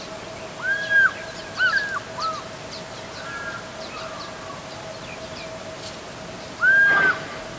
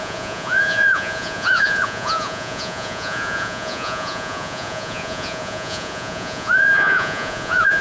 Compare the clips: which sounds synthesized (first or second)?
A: second